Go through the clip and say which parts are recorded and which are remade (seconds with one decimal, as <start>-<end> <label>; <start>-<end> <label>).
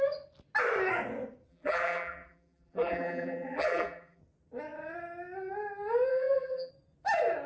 0.0-1.5 recorded; 1.5-4.2 remade; 4.2-6.1 recorded; 6.1-6.7 remade; 6.7-7.5 recorded